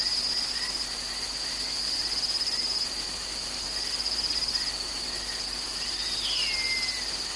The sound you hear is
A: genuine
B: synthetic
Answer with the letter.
A